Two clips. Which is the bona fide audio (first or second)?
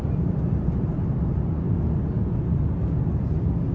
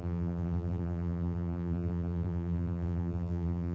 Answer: first